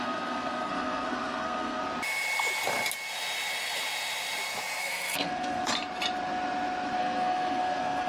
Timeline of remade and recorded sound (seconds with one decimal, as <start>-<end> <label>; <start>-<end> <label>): 0.0-1.8 remade; 1.8-4.8 recorded; 4.8-5.7 remade; 5.7-7.0 recorded; 7.0-8.1 remade